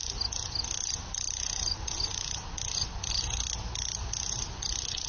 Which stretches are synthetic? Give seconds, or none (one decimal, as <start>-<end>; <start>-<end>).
none